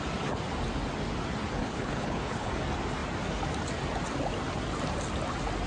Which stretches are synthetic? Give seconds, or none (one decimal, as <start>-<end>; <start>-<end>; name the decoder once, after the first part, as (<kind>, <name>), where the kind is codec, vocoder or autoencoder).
1.6-2.5 (codec, HILCodec)